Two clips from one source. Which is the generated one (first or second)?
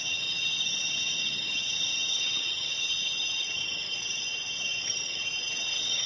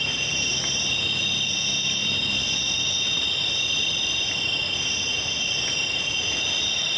first